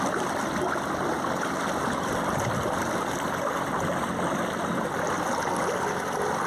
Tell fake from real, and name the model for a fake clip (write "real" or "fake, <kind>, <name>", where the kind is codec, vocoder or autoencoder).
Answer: real